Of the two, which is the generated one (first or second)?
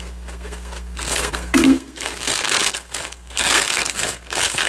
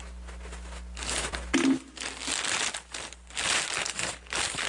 first